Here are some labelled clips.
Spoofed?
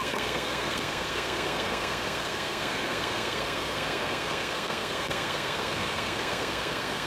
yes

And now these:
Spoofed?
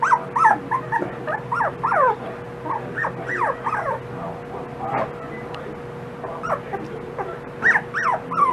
no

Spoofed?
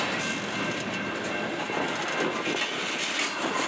no